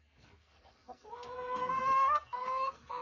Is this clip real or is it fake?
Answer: fake